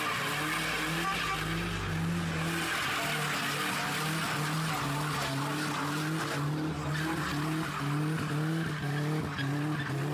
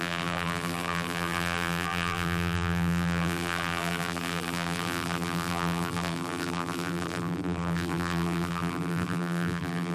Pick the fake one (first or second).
second